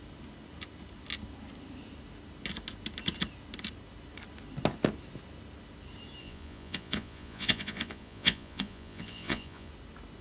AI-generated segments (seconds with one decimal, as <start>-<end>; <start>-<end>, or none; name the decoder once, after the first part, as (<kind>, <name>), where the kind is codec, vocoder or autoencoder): 6.2-9.7 (vocoder, Vocos)